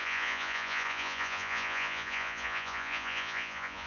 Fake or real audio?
fake